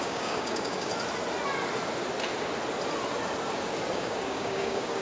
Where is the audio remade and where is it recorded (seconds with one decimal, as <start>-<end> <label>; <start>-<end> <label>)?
0.0-0.9 remade; 0.9-3.9 recorded; 3.9-5.0 remade